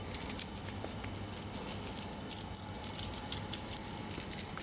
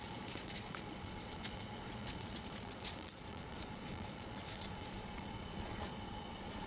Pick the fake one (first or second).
second